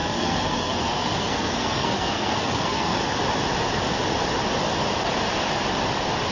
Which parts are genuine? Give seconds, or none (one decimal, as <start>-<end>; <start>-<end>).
3.0-6.3